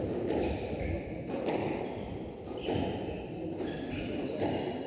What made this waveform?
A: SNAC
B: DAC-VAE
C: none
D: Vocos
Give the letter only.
C